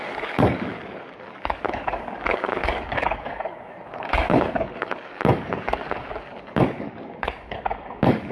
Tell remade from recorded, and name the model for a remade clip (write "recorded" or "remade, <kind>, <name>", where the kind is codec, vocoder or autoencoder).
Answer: remade, codec, DAC